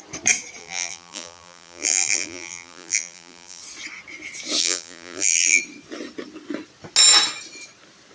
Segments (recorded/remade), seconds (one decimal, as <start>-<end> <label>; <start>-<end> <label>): 0.0-0.6 recorded; 0.6-3.6 remade; 3.6-4.6 recorded; 4.6-5.6 remade; 5.6-8.1 recorded